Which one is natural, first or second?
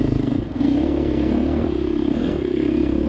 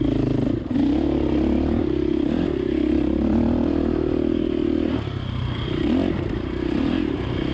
second